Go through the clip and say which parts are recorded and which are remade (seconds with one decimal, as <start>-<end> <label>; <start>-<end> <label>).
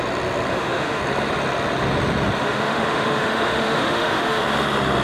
0.0-0.5 recorded; 0.5-1.0 remade; 1.0-2.4 recorded; 2.4-4.4 remade; 4.4-5.0 recorded